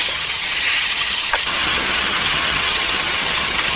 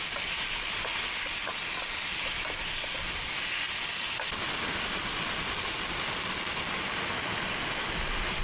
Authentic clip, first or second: second